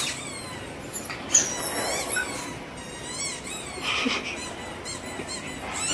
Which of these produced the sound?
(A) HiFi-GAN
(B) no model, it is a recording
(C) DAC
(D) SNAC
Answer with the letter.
B